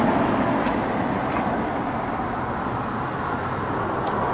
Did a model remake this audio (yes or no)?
no